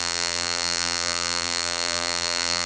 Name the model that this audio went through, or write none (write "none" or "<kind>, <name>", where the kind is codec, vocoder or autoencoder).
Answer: vocoder, BigVGAN v2